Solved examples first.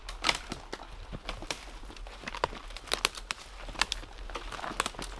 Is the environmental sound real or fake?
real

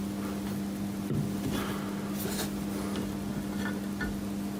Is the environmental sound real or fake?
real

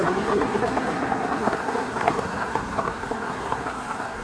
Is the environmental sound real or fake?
fake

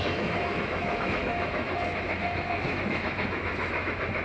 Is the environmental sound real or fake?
fake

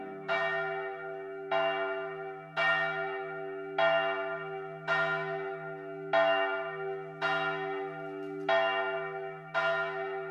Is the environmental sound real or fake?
real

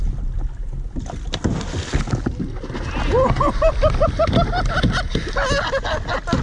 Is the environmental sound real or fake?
real